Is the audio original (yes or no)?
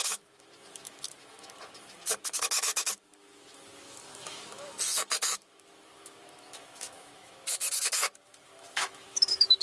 no